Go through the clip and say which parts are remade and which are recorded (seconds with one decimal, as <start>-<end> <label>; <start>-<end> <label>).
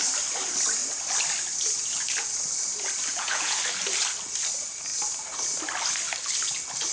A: 0.0-3.1 recorded; 3.1-3.6 remade; 3.6-6.9 recorded